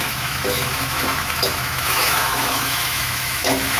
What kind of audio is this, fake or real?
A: fake